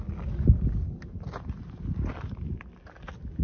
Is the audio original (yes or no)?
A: yes